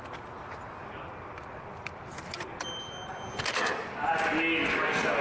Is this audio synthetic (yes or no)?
no